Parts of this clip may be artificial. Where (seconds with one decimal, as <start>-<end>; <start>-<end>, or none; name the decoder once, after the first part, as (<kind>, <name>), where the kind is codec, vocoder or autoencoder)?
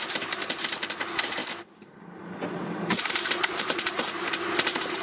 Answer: 0.0-1.4 (vocoder, BigVGAN v2); 2.7-5.0